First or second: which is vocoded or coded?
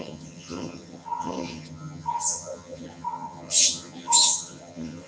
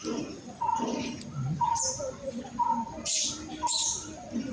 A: first